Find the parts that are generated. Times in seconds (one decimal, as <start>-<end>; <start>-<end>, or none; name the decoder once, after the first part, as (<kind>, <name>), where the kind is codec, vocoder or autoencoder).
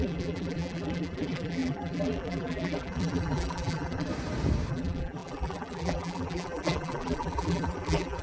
0.0-4.1 (vocoder, BigVGAN v2); 4.7-8.2